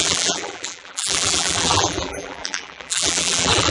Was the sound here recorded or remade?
remade